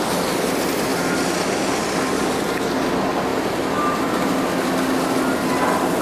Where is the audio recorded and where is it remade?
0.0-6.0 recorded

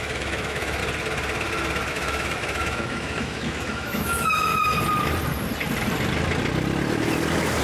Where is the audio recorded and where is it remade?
0.0-0.8 remade; 0.8-1.9 recorded; 1.9-4.5 remade; 4.5-7.6 recorded

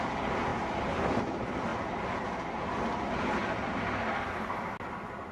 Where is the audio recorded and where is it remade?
0.0-5.3 recorded